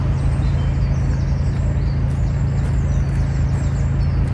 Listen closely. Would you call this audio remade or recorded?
recorded